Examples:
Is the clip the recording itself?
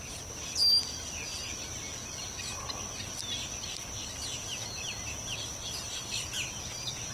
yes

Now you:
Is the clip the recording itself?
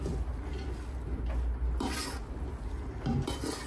yes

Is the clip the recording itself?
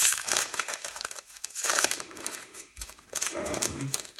no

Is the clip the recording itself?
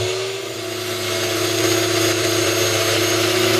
yes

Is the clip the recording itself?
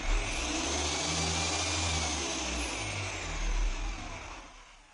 yes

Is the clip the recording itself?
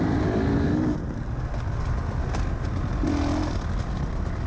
yes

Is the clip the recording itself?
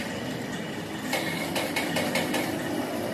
yes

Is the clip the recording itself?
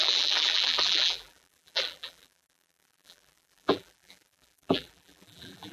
no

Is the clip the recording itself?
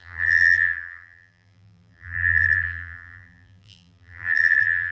no